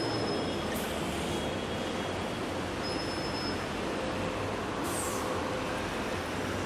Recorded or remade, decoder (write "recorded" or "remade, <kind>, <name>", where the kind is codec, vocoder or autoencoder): recorded